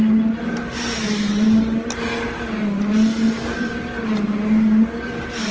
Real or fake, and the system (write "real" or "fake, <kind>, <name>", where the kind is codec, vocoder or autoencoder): real